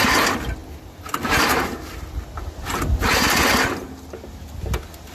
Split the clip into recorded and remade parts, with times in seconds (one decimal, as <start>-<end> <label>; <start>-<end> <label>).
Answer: 0.0-5.1 recorded